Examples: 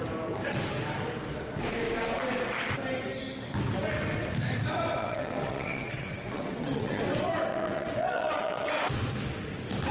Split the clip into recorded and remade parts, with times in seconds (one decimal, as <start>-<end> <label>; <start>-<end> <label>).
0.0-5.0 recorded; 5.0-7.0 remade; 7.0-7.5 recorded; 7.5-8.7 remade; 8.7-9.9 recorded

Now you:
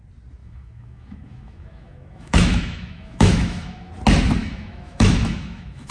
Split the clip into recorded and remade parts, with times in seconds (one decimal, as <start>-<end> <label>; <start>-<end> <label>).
0.0-0.4 recorded; 0.4-3.9 remade; 3.9-4.4 recorded; 4.4-5.9 remade

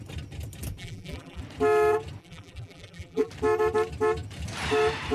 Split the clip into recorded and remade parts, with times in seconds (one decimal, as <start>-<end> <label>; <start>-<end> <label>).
0.0-0.8 recorded; 0.8-1.4 remade; 1.4-2.2 recorded; 2.2-3.3 remade; 3.3-5.1 recorded